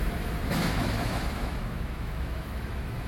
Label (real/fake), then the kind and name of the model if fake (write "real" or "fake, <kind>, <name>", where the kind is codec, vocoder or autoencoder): fake, autoencoder, DAC-VAE